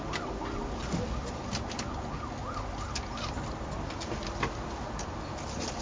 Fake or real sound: real